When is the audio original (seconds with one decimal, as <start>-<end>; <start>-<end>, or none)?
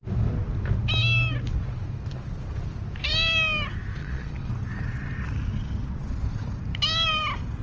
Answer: 0.0-4.0; 4.5-7.6